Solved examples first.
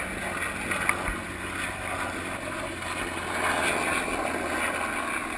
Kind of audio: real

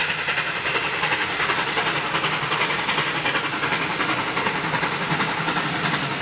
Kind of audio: real